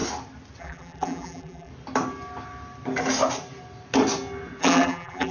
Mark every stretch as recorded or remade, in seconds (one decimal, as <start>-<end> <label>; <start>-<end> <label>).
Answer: 0.0-0.6 recorded; 0.6-1.7 remade; 1.7-4.6 recorded; 4.6-5.3 remade